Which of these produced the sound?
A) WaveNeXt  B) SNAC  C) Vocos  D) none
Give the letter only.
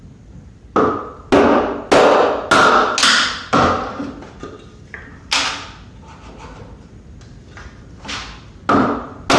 D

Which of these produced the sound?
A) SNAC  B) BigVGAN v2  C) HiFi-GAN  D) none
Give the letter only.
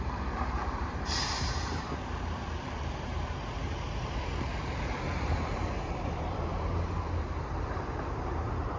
B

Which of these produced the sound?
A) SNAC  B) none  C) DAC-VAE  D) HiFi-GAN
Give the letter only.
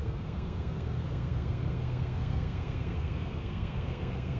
A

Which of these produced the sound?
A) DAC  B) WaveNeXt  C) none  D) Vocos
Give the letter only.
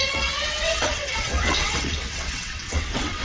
B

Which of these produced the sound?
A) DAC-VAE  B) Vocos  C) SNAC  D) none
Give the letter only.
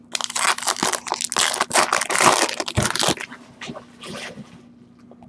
D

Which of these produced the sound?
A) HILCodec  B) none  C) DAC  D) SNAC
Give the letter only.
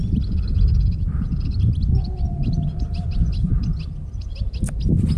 B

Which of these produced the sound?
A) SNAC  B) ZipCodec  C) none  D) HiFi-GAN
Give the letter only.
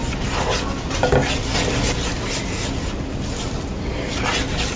C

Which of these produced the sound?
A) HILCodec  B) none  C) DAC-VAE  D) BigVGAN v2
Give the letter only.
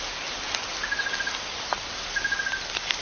B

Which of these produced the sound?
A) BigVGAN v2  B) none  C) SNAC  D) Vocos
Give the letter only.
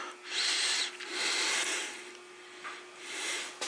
B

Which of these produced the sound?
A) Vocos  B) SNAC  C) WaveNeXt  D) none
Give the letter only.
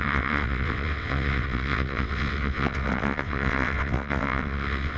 C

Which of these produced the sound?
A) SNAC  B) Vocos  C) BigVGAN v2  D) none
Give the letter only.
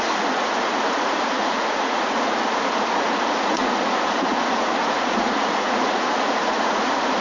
B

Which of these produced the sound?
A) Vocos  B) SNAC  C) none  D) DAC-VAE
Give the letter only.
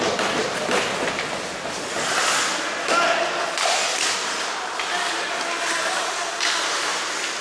C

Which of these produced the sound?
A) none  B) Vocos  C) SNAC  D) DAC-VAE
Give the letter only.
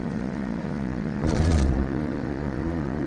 B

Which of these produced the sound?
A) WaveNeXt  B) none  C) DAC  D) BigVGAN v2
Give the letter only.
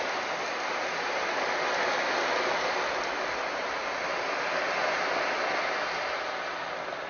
B